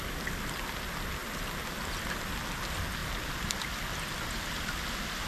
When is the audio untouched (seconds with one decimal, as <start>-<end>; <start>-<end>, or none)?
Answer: 0.0-5.3